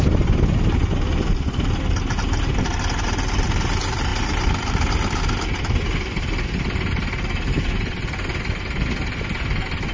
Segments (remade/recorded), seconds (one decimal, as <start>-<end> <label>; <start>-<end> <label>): 0.0-9.9 recorded